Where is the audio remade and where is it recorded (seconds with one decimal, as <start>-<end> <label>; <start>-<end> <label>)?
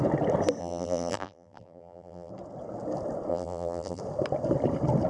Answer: 0.0-0.6 recorded; 0.6-2.3 remade; 2.3-3.3 recorded; 3.3-4.0 remade; 4.0-5.1 recorded